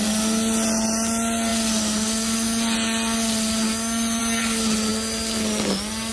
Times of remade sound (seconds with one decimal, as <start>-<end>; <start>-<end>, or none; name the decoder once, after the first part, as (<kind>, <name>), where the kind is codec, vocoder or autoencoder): none